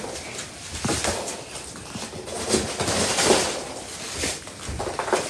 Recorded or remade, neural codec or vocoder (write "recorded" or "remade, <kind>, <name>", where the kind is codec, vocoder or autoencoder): recorded